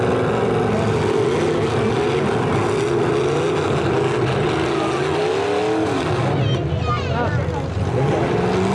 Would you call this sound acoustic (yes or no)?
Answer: yes